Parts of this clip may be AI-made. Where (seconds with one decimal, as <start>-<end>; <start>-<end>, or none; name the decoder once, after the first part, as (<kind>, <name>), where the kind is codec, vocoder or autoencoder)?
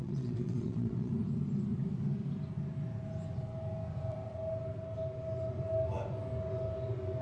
0.0-1.1 (vocoder, WaveNeXt)